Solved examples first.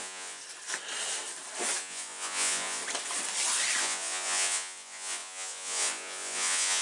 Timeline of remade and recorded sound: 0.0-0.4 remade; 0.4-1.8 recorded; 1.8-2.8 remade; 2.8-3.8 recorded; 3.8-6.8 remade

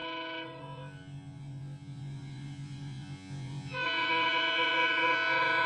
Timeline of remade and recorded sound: 0.0-0.6 recorded; 0.6-5.7 remade

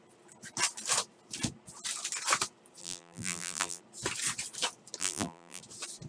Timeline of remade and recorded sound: 0.0-2.8 recorded; 2.8-3.8 remade; 3.8-5.0 recorded; 5.0-5.6 remade; 5.6-6.1 recorded